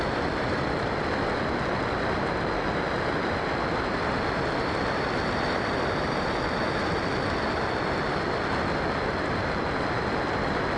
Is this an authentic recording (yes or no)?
yes